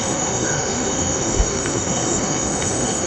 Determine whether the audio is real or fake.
fake